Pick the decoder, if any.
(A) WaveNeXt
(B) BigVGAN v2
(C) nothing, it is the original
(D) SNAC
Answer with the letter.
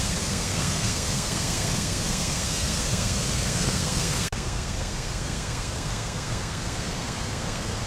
D